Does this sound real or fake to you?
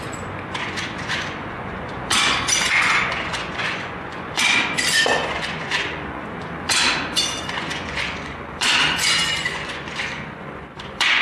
fake